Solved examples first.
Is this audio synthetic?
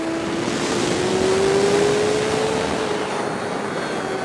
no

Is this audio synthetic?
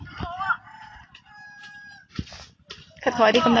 no